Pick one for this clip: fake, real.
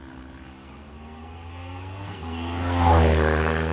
fake